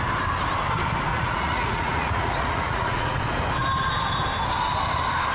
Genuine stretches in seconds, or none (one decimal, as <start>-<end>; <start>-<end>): 0.0-1.1; 3.2-5.3